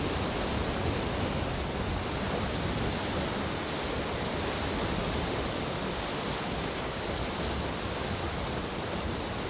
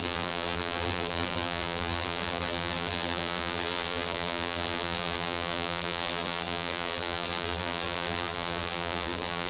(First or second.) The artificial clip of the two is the second